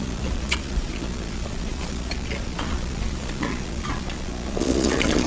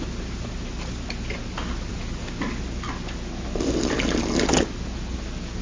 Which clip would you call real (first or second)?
second